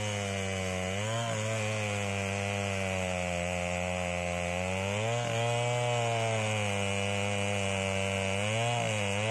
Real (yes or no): yes